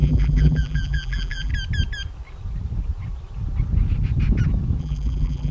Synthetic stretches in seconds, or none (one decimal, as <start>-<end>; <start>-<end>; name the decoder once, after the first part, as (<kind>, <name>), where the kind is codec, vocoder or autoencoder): 0.0-1.5 (vocoder, BigVGAN v2); 4.8-5.5